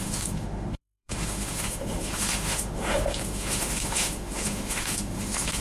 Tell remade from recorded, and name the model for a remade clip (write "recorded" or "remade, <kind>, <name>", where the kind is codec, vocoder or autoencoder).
remade, autoencoder, DAC-VAE